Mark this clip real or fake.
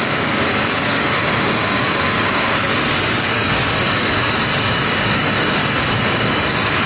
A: fake